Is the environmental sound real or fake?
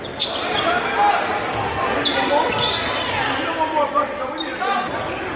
real